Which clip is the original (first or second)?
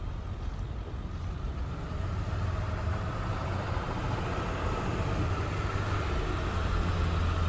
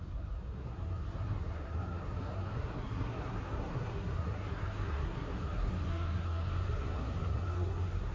first